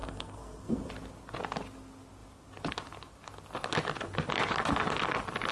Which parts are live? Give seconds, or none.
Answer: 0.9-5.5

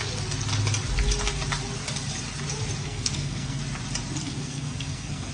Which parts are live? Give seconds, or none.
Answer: 0.0-2.8; 3.6-4.2

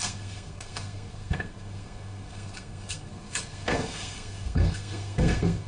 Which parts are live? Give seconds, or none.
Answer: none

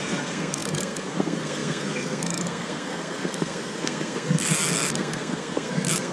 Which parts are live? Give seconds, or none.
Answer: none

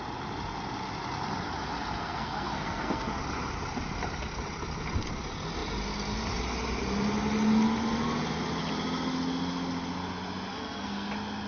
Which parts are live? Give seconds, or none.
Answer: 0.0-2.0; 3.2-10.5; 11.1-11.5

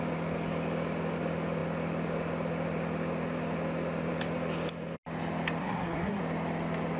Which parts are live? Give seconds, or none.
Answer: 0.0-5.6; 6.2-7.0